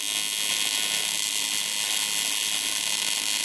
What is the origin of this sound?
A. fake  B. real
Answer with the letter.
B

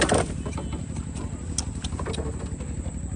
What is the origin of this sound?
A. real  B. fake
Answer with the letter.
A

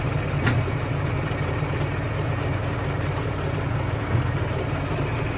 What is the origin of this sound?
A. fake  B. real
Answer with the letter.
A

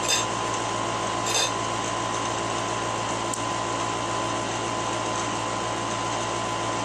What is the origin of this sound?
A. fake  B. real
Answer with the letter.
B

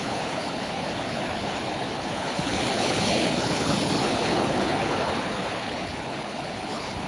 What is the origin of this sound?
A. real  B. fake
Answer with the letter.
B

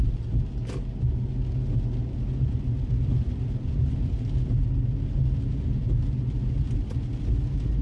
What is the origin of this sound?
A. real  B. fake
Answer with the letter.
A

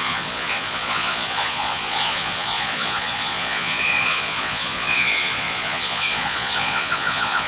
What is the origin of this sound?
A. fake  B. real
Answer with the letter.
A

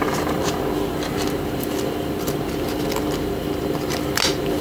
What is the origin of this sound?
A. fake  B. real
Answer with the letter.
B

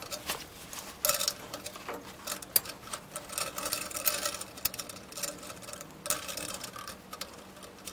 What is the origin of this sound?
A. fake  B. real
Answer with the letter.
B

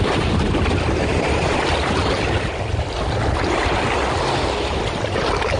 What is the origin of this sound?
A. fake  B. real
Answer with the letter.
A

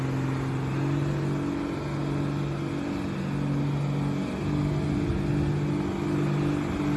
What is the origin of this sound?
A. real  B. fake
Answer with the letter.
A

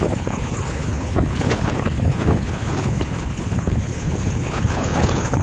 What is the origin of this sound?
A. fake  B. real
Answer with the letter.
A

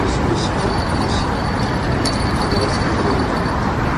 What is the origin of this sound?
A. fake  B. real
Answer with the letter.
B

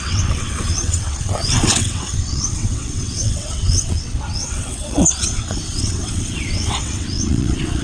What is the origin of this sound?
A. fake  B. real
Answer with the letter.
A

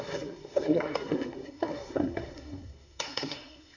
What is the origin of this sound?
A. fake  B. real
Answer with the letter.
A